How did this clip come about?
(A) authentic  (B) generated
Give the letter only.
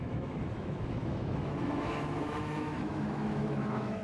B